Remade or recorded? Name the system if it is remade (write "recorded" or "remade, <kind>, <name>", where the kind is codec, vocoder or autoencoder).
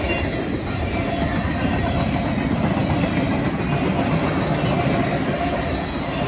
recorded